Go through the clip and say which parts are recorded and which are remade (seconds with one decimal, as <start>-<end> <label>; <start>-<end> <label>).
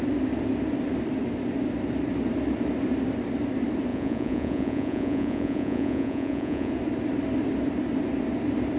0.0-3.9 recorded; 3.9-6.7 remade; 6.7-8.8 recorded